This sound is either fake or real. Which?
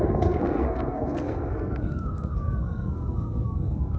fake